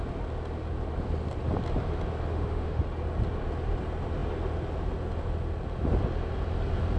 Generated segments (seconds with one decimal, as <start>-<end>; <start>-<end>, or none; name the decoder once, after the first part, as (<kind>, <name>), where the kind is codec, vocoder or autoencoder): 2.3-2.8 (autoencoder, DAC-VAE)